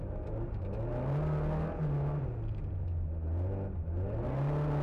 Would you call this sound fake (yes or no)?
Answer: no